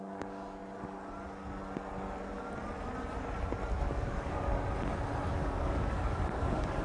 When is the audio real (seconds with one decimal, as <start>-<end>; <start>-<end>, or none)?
0.6-3.7; 4.5-5.4